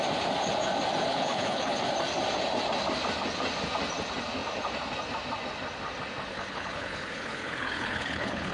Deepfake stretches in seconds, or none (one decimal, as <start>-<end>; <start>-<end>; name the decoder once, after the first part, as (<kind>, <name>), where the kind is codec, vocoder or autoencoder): 1.1-1.7 (codec, HILCodec); 6.3-8.5